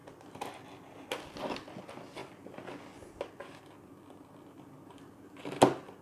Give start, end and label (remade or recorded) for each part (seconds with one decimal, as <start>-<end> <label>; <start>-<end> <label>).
0.0-6.0 recorded